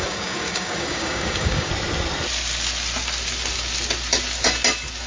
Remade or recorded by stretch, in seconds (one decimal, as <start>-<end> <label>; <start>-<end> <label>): 0.0-1.7 remade; 1.7-5.1 recorded